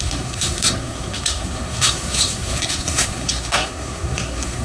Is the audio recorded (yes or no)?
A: no